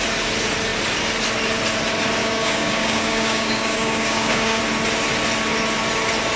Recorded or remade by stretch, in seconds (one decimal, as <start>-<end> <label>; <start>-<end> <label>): 0.0-2.2 recorded; 2.2-4.6 remade; 4.6-6.4 recorded